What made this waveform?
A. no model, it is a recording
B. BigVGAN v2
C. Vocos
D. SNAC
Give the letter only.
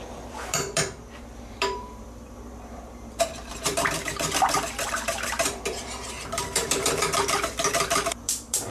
B